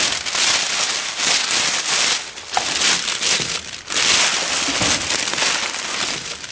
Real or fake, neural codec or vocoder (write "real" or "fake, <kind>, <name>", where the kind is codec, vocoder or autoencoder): real